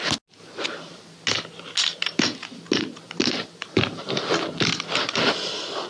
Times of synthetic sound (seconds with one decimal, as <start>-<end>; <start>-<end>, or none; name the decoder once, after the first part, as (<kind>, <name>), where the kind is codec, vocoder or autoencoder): 1.9-4.0 (vocoder, BigVGAN v2)